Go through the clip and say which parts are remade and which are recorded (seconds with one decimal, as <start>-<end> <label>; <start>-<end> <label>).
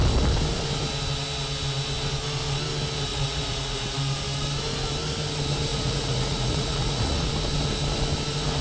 0.0-3.1 recorded; 3.1-4.0 remade; 4.0-5.7 recorded; 5.7-7.3 remade; 7.3-8.6 recorded